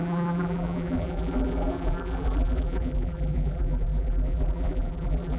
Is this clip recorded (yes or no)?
no